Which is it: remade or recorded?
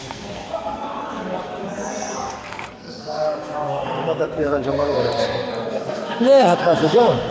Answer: remade